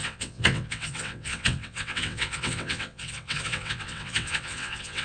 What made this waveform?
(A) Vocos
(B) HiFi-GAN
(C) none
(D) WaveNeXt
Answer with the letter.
D